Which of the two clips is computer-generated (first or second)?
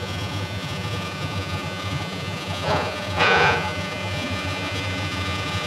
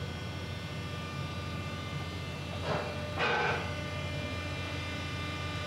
first